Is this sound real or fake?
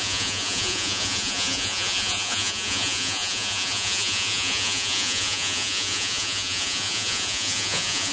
fake